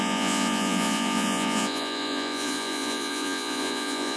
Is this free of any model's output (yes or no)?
no